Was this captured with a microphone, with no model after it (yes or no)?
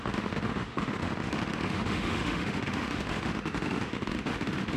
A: no